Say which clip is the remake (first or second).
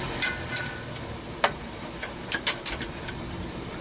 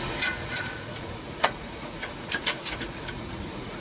second